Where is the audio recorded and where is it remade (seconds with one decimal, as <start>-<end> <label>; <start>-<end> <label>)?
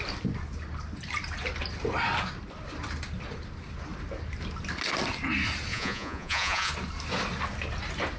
0.0-5.7 recorded; 5.7-6.7 remade; 6.7-8.2 recorded